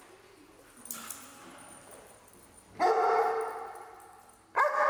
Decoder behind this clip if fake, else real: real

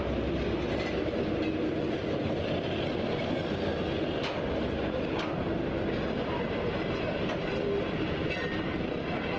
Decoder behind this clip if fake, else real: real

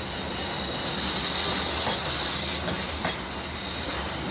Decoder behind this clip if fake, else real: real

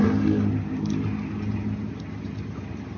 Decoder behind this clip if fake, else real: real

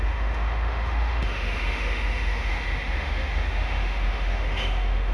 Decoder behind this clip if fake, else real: fake, autoencoder, DAC-VAE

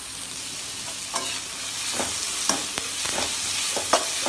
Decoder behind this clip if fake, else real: real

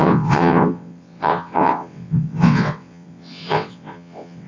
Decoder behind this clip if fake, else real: fake, vocoder, WaveNeXt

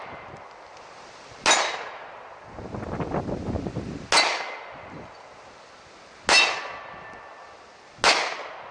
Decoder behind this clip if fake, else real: real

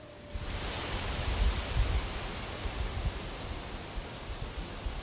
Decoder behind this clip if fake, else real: real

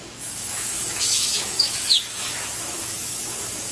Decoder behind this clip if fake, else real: fake, autoencoder, DAC-VAE